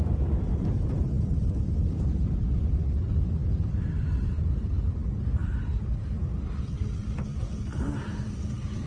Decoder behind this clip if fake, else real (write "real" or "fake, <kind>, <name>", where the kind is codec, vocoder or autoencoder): real